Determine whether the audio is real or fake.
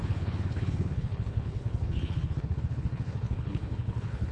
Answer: fake